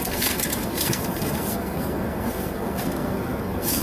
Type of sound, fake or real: fake